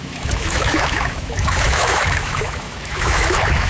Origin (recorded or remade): remade